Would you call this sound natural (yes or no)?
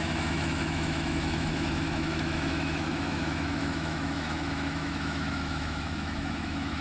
no